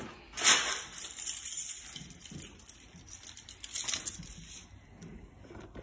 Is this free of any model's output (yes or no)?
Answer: yes